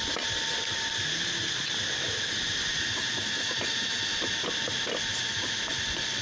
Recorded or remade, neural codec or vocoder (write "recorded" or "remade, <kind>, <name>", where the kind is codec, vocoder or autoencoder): recorded